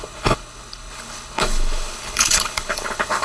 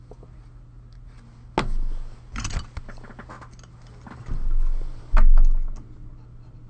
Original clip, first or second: second